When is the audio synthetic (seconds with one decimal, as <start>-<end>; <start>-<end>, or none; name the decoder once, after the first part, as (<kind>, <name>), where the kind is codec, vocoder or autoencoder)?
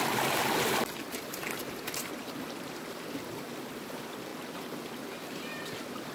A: 0.0-4.3 (vocoder, BigVGAN v2); 5.3-6.1